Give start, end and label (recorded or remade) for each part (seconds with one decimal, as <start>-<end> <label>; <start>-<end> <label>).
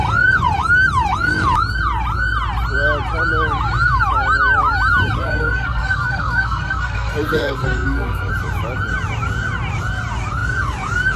0.0-5.2 recorded; 5.2-8.3 remade; 8.3-11.2 recorded